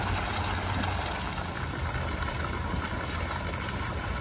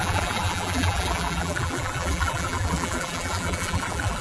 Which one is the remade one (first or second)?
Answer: second